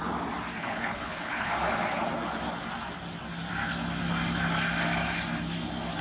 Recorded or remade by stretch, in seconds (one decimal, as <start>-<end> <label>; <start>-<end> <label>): 0.0-0.6 recorded; 0.6-1.5 remade; 1.5-6.0 recorded